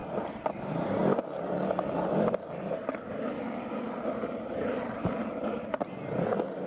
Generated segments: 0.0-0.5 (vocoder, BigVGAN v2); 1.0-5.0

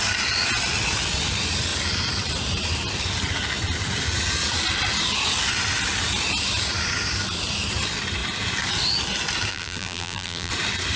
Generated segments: 9.5-10.5 (vocoder, BigVGAN v2)

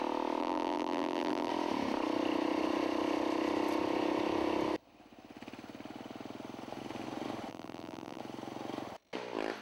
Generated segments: 0.4-1.5 (vocoder, BigVGAN v2); 7.5-8.2

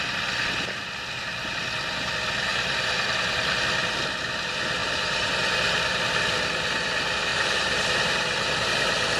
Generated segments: 2.5-3.4 (vocoder, BigVGAN v2); 4.8-6.2; 7.3-7.8

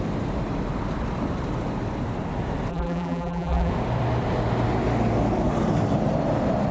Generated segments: 2.7-3.7 (vocoder, BigVGAN v2)